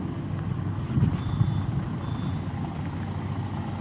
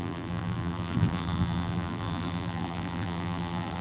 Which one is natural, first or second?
first